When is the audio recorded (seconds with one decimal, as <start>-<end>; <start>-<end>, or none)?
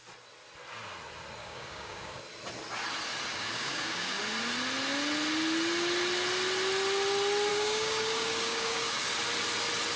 0.0-1.4; 2.2-3.3; 4.2-7.5; 9.1-10.0